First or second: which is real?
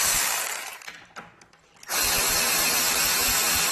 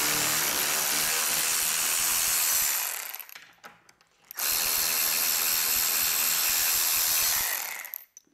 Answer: second